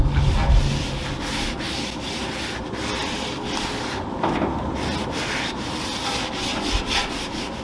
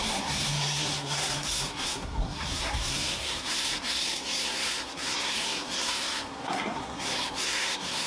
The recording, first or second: first